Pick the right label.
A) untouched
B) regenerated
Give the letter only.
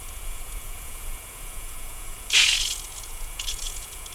B